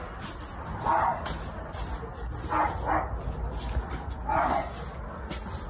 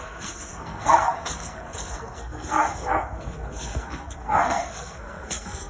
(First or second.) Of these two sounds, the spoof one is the second